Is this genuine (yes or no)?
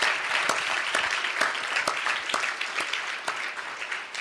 yes